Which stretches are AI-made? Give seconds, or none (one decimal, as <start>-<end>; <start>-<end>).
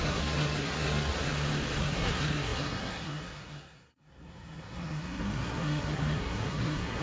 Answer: 0.0-1.3; 1.8-7.0